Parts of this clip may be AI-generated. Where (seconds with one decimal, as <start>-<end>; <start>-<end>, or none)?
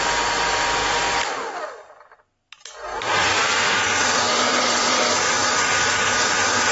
0.8-2.2; 2.9-3.7; 4.3-5.2